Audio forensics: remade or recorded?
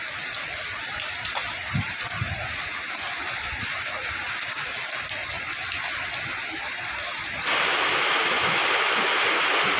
recorded